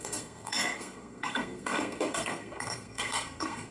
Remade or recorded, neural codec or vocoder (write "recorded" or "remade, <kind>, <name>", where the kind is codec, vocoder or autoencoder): remade, codec, SNAC